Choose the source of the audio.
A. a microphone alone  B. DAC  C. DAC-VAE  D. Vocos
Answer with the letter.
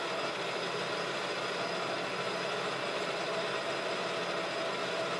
A